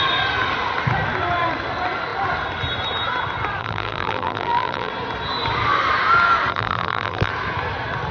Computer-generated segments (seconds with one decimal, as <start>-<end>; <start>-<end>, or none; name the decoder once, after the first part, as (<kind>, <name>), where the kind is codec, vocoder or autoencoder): 3.6-4.9 (vocoder, BigVGAN v2); 6.5-7.3